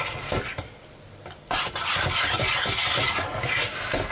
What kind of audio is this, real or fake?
real